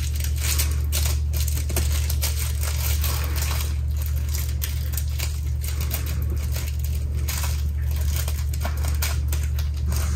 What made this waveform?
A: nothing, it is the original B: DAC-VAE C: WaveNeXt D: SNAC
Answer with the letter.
A